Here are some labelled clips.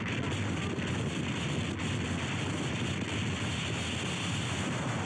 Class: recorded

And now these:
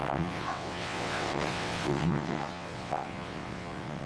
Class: remade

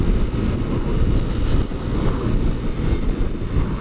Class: recorded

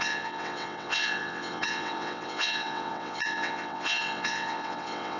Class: remade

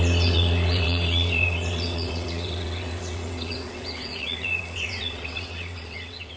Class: remade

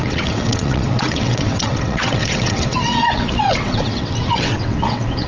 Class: remade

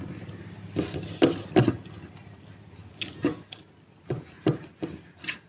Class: recorded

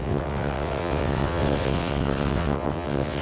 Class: remade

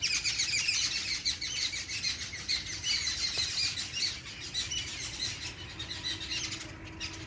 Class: recorded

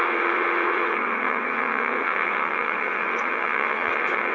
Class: remade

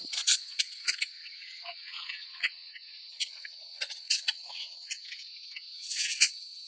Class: remade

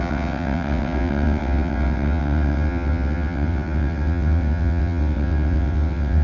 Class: remade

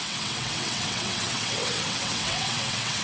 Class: remade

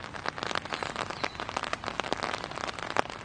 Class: recorded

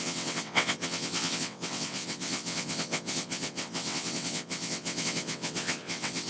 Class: remade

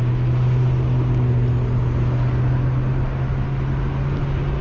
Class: recorded